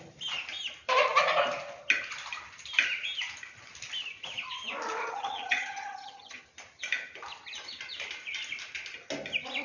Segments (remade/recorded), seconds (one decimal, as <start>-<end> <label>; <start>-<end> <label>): 0.0-5.0 recorded; 5.0-6.4 remade; 6.4-9.6 recorded